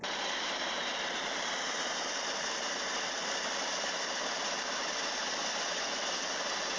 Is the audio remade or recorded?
remade